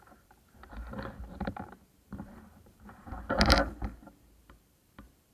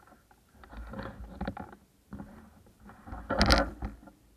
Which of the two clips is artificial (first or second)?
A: first